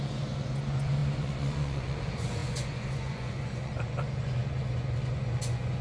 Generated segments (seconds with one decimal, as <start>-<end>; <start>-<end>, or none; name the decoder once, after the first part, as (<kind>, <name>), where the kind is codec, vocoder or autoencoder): 0.0-5.8 (vocoder, Vocos)